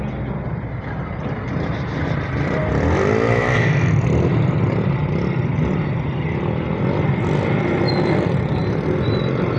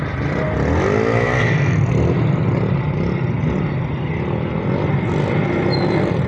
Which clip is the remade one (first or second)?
first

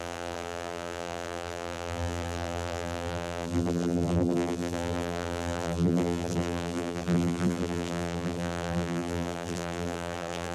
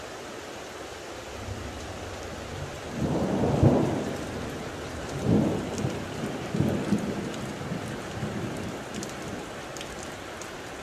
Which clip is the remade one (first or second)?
first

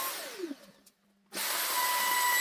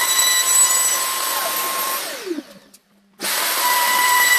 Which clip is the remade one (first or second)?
second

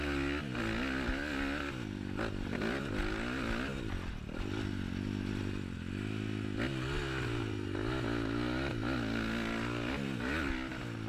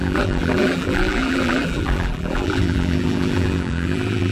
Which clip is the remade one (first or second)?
second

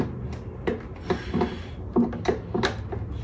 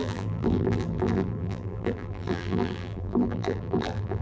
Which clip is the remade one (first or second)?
second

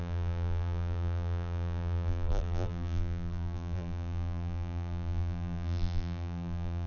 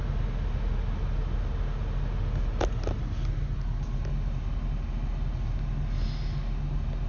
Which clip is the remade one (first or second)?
first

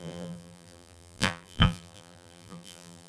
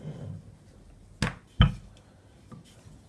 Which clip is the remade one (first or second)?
first